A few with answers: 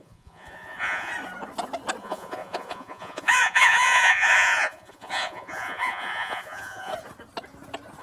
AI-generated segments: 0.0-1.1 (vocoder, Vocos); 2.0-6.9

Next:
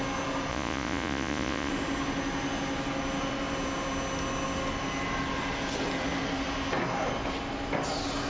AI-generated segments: 0.5-1.7 (vocoder, Vocos)

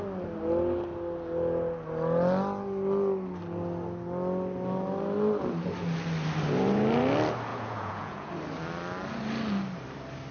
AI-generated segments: 7.5-8.3 (vocoder, Vocos)